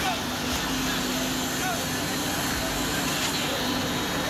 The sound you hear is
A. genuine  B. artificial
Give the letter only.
A